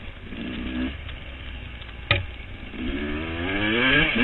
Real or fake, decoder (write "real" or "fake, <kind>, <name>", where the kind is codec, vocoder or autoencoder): real